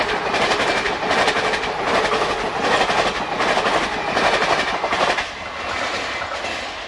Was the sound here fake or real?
real